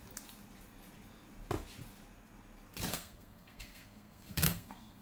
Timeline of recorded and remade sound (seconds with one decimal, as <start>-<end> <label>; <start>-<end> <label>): 0.0-2.9 recorded; 2.9-5.0 remade